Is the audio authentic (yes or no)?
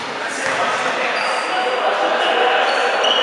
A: yes